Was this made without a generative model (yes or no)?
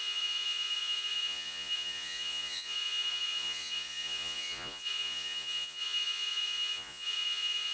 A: no